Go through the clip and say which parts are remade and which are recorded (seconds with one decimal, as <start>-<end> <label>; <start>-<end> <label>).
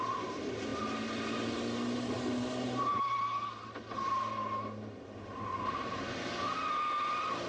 0.0-7.5 recorded